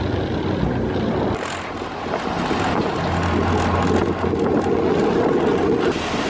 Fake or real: real